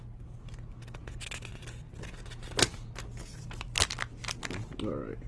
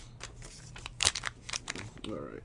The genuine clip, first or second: first